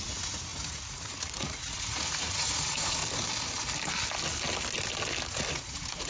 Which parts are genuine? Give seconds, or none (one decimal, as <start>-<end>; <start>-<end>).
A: 3.0-5.5